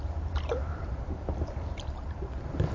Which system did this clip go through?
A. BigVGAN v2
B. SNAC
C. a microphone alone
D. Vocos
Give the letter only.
A